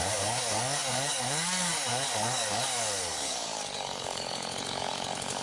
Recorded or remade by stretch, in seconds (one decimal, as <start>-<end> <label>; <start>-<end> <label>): 0.0-5.4 remade